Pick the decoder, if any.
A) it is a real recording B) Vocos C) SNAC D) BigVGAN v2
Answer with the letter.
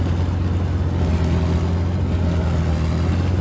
A